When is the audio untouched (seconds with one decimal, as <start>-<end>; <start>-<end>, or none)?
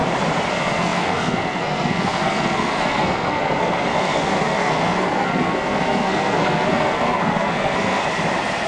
0.0-0.5; 8.0-8.7